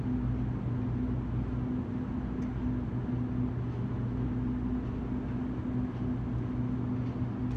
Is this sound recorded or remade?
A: recorded